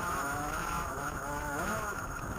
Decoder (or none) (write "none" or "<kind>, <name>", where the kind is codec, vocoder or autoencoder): autoencoder, DAC-VAE